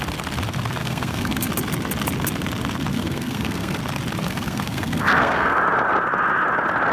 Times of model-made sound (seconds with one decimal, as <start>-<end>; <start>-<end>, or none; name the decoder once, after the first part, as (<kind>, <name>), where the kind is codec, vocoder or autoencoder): 0.8-1.5 (codec, SNAC); 2.9-3.8; 4.2-5.6